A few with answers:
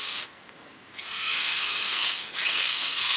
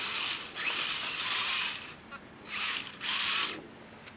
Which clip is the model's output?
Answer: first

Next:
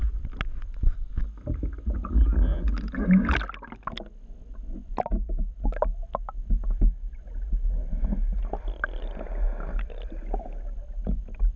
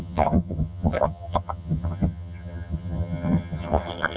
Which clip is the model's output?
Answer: second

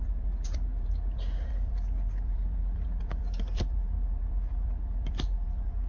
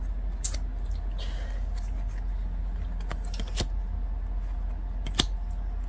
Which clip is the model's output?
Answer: first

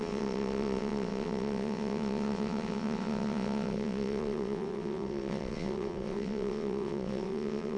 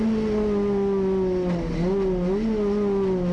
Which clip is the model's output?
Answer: first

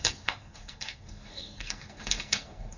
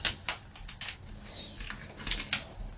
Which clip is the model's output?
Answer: first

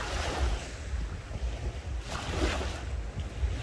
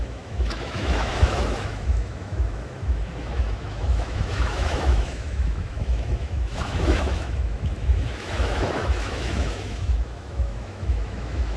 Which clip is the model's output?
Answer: second